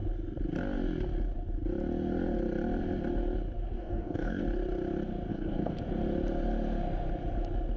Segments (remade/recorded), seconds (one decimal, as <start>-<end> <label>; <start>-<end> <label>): 0.0-3.7 recorded; 3.7-4.4 remade; 4.4-5.3 recorded; 5.3-5.8 remade; 5.8-7.8 recorded